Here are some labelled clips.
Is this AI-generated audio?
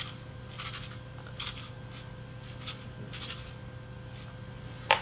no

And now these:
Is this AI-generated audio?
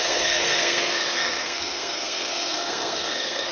yes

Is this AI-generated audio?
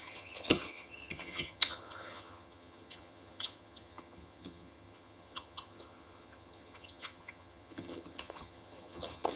yes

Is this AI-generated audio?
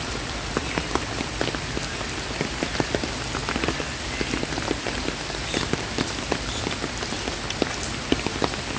no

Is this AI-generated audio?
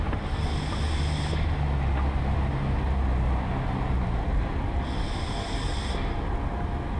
no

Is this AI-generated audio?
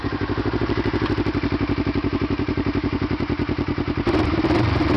yes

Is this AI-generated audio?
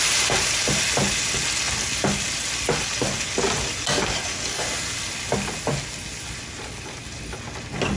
no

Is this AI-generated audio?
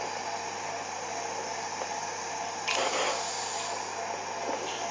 no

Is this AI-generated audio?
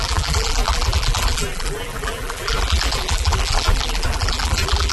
yes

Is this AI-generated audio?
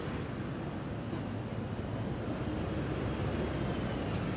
no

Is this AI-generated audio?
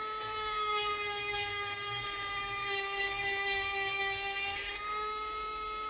yes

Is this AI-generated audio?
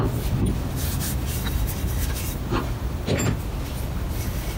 no